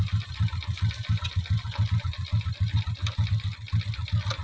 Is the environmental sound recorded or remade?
recorded